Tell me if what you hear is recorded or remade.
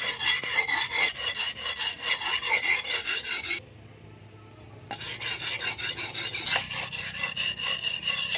recorded